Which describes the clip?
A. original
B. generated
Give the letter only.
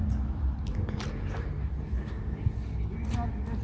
A